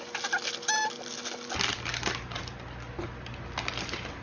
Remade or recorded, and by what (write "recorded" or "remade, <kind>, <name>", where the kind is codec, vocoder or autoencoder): recorded